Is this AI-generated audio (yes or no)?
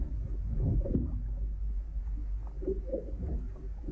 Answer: no